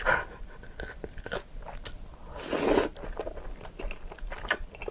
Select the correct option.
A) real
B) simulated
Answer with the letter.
A